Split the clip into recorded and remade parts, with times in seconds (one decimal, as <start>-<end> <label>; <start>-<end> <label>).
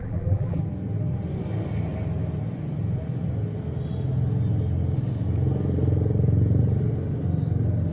0.0-0.6 remade; 0.6-7.9 recorded